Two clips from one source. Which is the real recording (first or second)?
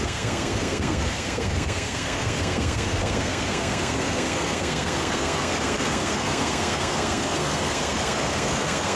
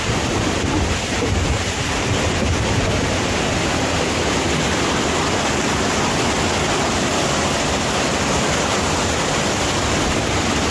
second